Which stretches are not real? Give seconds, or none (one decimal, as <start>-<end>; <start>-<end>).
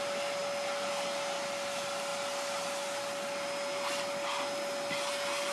none